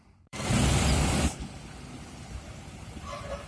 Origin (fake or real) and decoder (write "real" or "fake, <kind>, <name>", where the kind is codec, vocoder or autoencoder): fake, vocoder, BigVGAN v2